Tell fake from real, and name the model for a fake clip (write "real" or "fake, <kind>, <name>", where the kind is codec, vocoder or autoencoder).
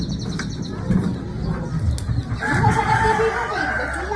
real